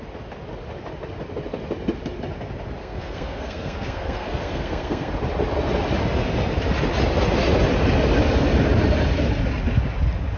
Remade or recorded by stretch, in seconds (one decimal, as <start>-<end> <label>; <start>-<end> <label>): 0.0-2.8 recorded; 2.8-5.1 remade; 5.1-10.4 recorded